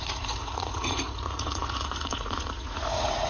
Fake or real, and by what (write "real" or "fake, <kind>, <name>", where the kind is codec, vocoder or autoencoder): fake, vocoder, Vocos